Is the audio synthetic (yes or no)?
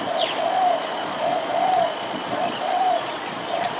yes